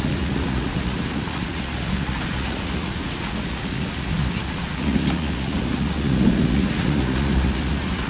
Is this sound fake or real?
fake